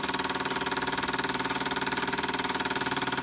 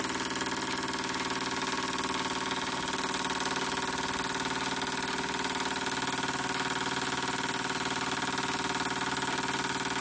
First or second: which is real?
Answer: second